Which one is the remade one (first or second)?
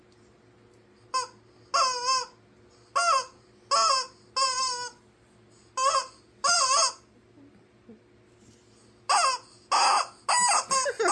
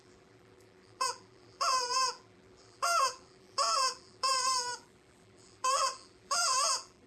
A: second